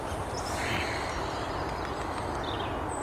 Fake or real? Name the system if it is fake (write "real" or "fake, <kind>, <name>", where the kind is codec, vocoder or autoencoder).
real